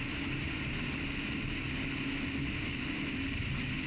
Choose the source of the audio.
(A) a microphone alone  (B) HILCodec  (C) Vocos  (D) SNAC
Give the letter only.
A